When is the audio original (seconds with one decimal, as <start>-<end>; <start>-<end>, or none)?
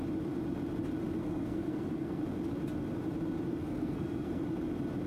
0.0-1.2; 2.2-3.6; 4.4-5.1